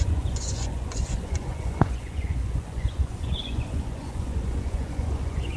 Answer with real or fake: fake